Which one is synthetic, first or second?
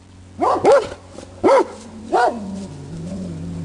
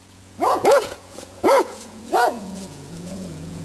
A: second